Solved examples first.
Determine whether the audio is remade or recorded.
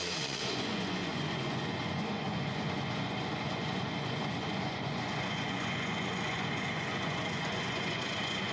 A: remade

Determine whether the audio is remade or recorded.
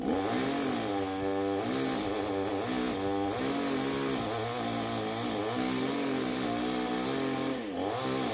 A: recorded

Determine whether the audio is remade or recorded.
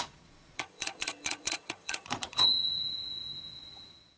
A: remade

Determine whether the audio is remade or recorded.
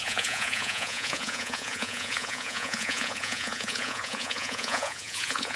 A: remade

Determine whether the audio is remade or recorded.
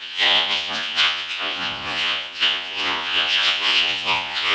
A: remade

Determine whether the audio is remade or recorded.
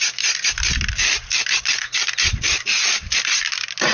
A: recorded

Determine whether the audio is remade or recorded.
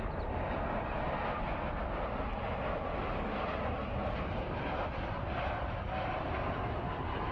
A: recorded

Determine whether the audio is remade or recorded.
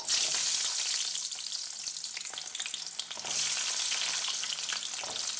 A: recorded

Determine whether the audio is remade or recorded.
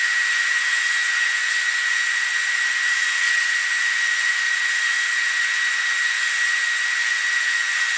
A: remade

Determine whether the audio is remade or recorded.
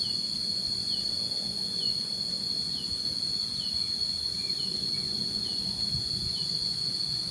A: remade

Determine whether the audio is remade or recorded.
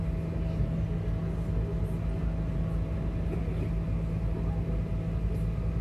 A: recorded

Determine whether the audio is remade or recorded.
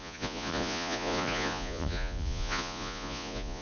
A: remade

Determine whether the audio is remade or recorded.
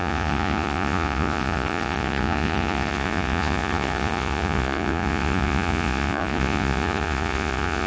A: remade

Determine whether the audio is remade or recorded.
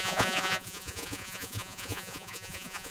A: remade